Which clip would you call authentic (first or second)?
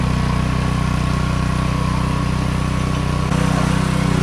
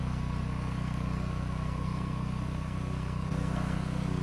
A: first